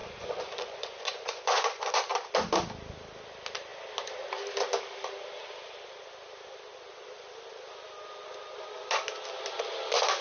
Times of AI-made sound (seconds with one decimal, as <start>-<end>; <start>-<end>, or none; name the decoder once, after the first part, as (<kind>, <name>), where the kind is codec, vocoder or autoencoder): 0.0-2.0 (vocoder, Vocos)